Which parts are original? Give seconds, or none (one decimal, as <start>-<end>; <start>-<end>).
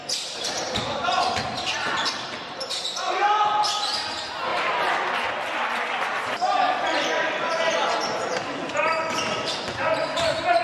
0.0-4.5; 5.3-6.1; 7.5-10.6